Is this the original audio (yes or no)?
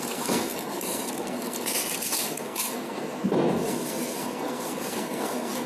no